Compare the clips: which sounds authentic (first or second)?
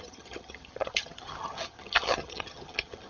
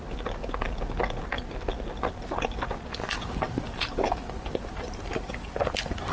second